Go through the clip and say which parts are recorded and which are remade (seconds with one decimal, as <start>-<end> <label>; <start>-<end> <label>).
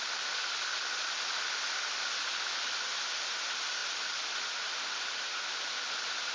0.0-6.3 recorded